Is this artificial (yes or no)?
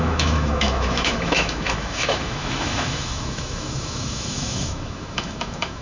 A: yes